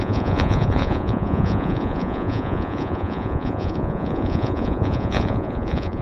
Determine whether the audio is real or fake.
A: fake